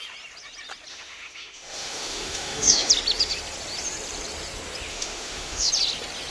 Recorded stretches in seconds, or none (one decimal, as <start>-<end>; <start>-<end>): 0.0-0.9; 2.9-4.9; 5.7-6.3